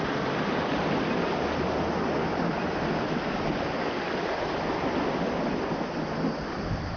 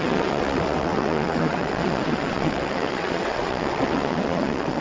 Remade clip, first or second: second